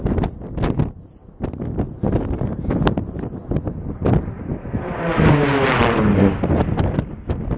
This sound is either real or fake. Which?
real